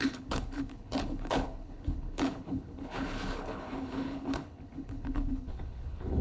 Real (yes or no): no